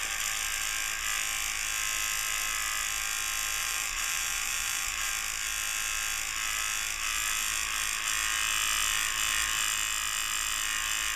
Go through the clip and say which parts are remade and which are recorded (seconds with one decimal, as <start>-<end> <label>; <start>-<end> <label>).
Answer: 0.0-3.6 recorded; 3.6-5.1 remade; 5.1-11.2 recorded